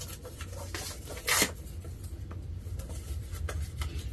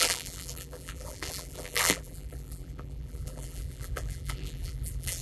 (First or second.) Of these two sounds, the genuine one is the first